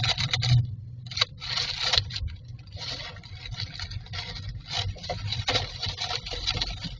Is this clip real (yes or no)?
yes